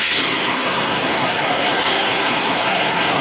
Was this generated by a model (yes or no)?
yes